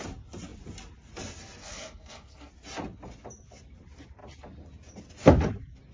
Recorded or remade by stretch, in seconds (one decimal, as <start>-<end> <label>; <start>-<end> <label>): 0.0-1.6 recorded; 1.6-2.5 remade; 2.5-5.9 recorded